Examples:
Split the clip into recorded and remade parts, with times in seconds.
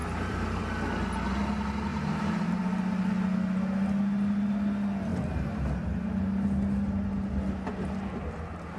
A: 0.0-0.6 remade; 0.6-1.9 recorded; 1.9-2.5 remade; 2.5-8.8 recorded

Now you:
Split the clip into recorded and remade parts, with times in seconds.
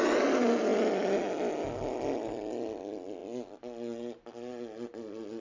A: 0.0-5.4 recorded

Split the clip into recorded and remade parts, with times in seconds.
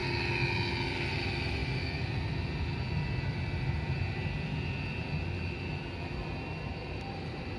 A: 0.0-6.7 recorded; 6.7-7.6 remade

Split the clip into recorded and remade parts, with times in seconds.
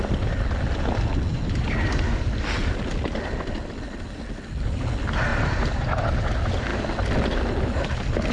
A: 0.0-1.3 recorded; 1.3-2.0 remade; 2.0-5.3 recorded; 5.3-5.9 remade; 5.9-8.3 recorded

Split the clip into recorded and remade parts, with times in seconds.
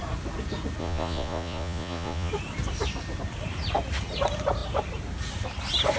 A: 0.0-0.8 recorded; 0.8-2.3 remade; 2.3-6.0 recorded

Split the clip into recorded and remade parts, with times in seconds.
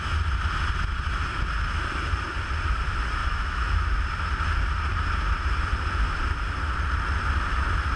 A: 0.0-3.2 recorded; 3.2-3.8 remade; 3.8-8.0 recorded